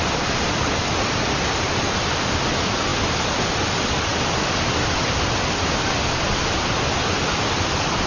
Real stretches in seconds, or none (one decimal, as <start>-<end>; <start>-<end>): 0.0-8.1